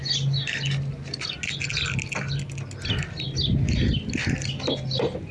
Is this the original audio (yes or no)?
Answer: yes